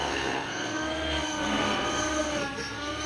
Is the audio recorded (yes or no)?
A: no